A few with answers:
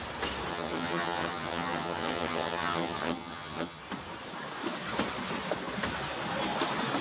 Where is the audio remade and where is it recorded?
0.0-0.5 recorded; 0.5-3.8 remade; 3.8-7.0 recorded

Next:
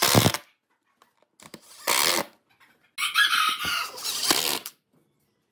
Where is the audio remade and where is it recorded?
0.0-5.5 recorded

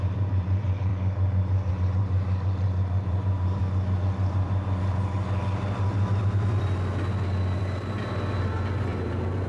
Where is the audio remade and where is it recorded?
0.0-0.9 remade; 0.9-1.7 recorded; 1.7-3.6 remade; 3.6-7.6 recorded; 7.6-9.5 remade

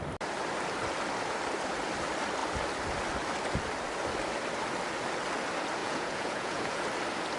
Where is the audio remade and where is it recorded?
0.0-5.8 recorded; 5.8-6.8 remade; 6.8-7.4 recorded

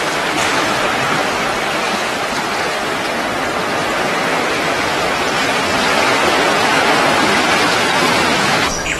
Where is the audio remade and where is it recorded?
0.0-3.8 recorded; 3.8-9.0 remade

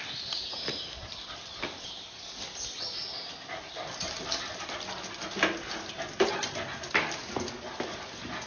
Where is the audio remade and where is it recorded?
0.0-8.5 recorded